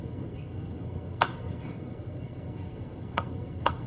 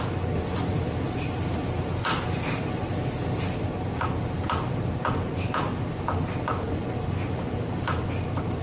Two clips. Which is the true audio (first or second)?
second